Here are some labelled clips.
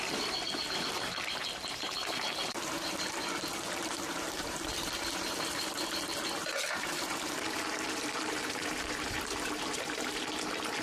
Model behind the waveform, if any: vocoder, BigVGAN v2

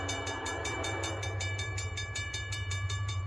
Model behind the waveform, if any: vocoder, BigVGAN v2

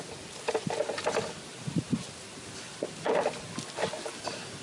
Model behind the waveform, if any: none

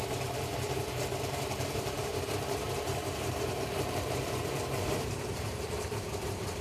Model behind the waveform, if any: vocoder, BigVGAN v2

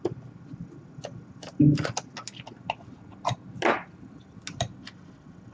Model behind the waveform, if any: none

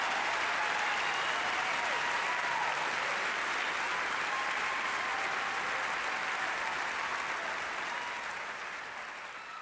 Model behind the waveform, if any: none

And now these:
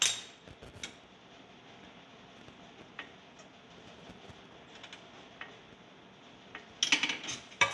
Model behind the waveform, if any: none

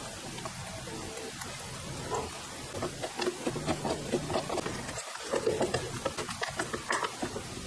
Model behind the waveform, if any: none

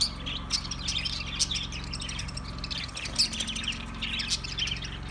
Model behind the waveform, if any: none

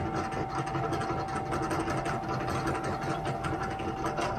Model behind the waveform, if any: none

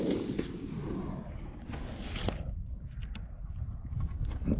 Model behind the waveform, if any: none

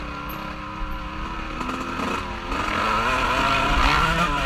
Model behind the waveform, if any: none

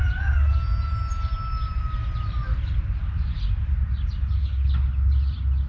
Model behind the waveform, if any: none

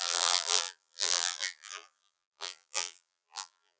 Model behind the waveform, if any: vocoder, BigVGAN v2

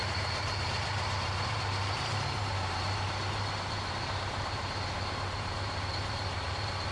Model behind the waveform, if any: vocoder, BigVGAN v2